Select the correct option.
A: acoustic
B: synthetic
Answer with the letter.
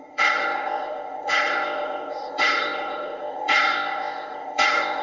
B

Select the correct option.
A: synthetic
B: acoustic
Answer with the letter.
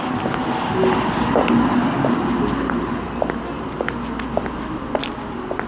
B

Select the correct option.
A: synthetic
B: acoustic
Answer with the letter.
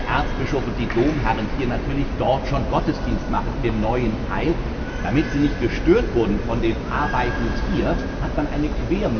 B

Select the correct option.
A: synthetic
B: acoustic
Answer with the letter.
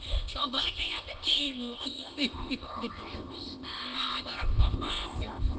A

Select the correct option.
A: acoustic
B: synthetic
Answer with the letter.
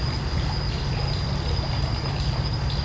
A